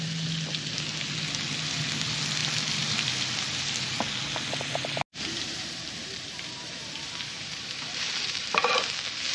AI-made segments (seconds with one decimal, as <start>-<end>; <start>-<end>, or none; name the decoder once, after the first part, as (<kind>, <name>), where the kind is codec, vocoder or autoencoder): 5.1-8.7 (vocoder, BigVGAN v2)